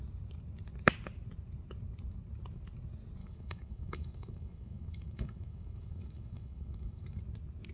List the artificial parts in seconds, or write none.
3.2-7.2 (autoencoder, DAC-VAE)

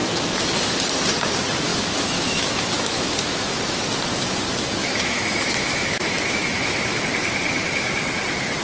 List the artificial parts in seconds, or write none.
0.0-0.5 (autoencoder, DAC-VAE); 1.7-3.8; 4.8-7.0

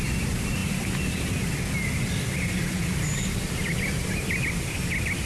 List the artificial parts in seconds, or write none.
none